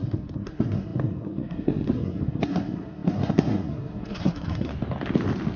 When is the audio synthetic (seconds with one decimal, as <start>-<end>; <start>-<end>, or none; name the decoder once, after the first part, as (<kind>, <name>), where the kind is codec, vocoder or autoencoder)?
0.0-4.7 (codec, SNAC)